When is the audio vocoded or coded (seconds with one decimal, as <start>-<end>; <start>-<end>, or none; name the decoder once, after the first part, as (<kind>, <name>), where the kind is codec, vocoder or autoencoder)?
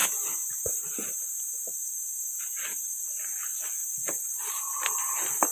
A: 0.0-2.8 (vocoder, BigVGAN v2)